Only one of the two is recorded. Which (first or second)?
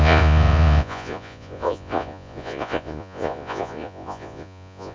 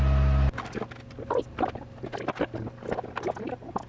second